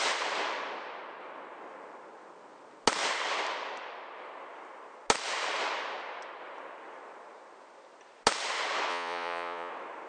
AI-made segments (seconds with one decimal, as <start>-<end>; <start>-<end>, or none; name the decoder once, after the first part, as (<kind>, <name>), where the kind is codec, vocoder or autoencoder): 8.9-9.7 (vocoder, Vocos)